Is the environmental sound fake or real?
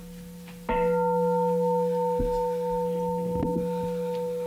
real